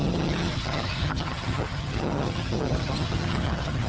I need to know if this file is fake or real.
fake